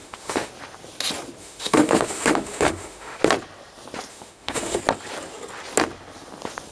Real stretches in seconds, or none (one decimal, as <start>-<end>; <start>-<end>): 0.5-1.4; 3.2-4.1; 4.8-6.7